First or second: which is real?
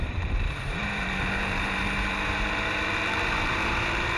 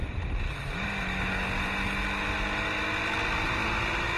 second